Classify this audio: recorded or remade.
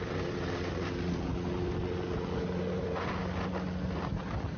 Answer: recorded